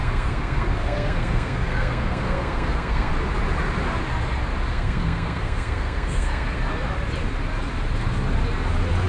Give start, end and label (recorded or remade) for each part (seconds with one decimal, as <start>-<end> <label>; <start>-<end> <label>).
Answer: 0.0-3.1 remade; 3.1-4.7 recorded; 4.7-6.6 remade; 6.6-9.1 recorded